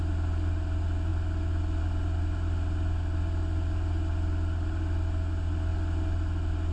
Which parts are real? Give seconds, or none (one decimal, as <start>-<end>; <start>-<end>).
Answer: 0.0-6.7